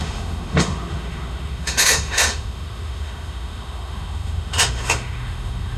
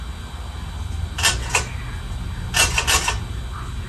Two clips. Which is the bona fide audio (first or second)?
second